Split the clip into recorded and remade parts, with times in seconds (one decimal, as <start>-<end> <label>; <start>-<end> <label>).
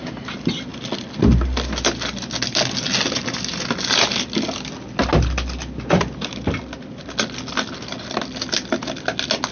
0.0-9.5 recorded